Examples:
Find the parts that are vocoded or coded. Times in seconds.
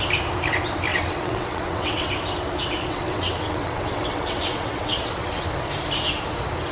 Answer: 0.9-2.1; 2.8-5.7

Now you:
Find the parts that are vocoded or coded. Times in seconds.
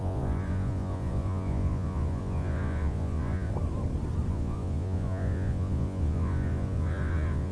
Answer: 0.0-3.5; 4.3-7.5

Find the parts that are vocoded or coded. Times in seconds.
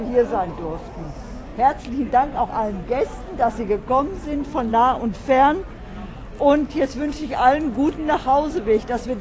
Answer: 1.5-2.5